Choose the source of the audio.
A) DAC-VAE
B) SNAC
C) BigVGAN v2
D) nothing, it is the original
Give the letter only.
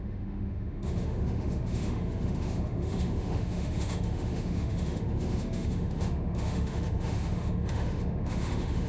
A